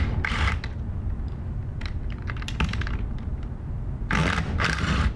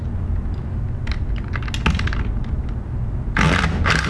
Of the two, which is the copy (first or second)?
first